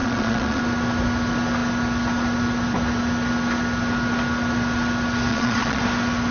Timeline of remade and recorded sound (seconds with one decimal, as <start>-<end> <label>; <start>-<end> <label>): 0.0-0.6 remade; 0.6-5.3 recorded; 5.3-5.8 remade; 5.8-6.3 recorded